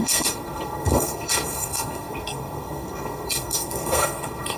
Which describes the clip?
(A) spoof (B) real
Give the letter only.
A